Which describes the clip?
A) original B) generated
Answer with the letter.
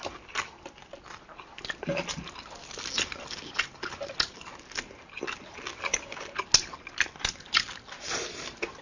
A